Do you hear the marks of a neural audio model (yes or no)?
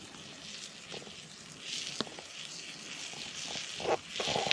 no